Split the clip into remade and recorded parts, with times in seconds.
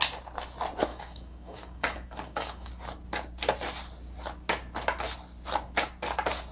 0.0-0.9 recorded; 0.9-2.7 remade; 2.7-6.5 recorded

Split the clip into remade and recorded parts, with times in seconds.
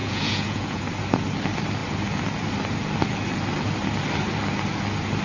0.0-0.8 remade; 0.8-5.2 recorded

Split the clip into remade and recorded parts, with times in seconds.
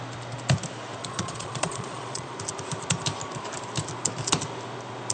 0.0-1.0 recorded; 1.0-2.4 remade; 2.4-5.1 recorded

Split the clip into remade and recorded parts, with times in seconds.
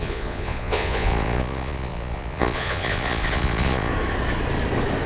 0.0-3.9 remade; 3.9-5.1 recorded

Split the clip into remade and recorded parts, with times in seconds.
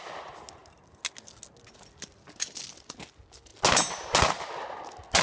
0.0-5.2 recorded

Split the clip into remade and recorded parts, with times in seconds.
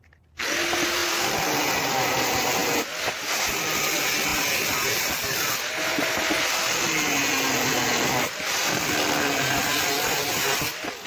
0.0-11.1 recorded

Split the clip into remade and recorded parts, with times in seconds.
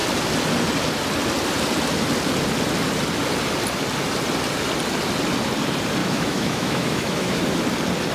0.0-6.0 recorded; 6.0-7.4 remade; 7.4-8.1 recorded